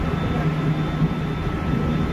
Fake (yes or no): no